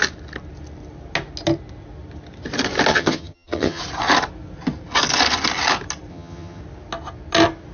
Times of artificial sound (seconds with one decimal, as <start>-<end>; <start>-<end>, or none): 2.9-3.8; 6.1-6.6